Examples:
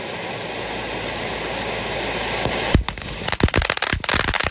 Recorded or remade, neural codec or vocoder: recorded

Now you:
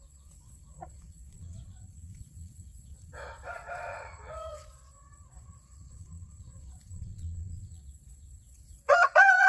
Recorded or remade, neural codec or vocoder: remade, vocoder, Vocos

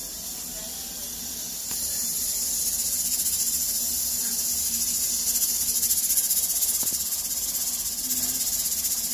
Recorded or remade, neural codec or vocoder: recorded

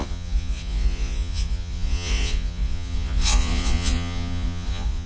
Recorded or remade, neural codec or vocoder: remade, vocoder, Vocos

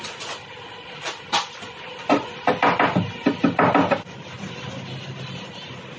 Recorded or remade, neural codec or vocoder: recorded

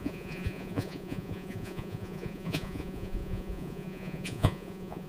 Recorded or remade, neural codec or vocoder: remade, vocoder, Vocos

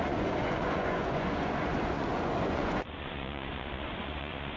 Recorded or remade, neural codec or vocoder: remade, vocoder, Vocos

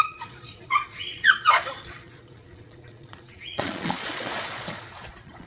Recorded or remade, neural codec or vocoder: remade, vocoder, Vocos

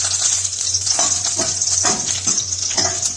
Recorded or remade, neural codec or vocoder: remade, vocoder, Vocos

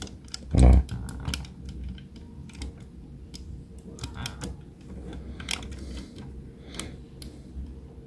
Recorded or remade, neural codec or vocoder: recorded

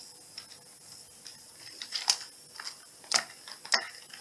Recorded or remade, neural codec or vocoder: recorded